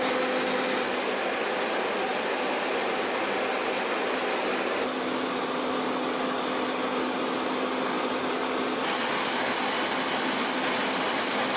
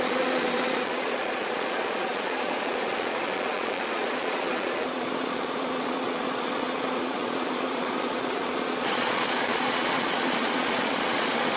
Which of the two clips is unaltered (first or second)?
first